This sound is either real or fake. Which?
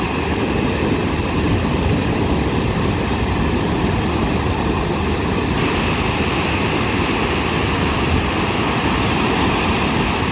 real